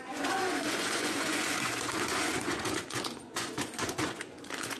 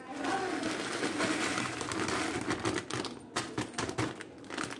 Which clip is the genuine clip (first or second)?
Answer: second